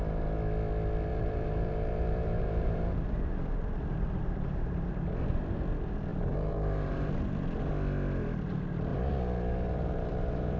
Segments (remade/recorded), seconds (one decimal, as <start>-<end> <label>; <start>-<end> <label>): 0.0-1.1 recorded; 1.1-3.3 remade; 3.3-6.1 recorded; 6.1-7.1 remade; 7.1-8.9 recorded; 8.9-10.6 remade